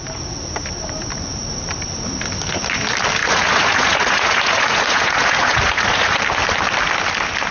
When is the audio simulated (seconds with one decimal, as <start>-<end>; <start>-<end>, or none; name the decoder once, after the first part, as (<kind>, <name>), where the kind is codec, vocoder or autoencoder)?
3.2-6.2 (vocoder, Vocos)